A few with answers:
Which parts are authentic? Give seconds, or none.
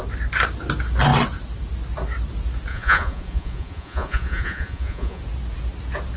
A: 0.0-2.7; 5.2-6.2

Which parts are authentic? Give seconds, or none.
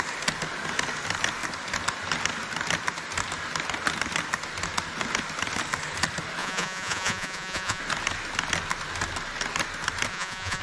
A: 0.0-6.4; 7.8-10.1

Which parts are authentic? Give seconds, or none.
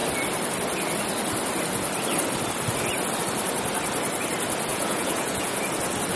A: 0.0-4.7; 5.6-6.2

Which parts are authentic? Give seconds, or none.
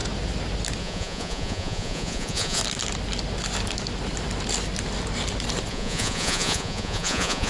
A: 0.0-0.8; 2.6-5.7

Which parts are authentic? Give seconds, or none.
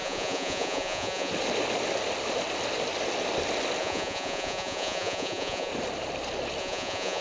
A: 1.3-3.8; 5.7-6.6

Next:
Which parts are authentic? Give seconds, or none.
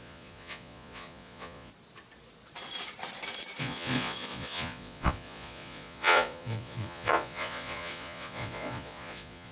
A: 1.7-3.6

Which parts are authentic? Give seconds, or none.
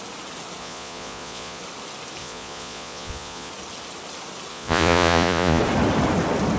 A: 0.0-0.6; 1.6-2.2; 3.5-4.5; 5.6-6.6